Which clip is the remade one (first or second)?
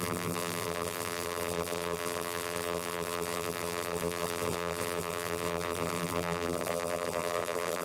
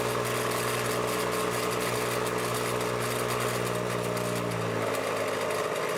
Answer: first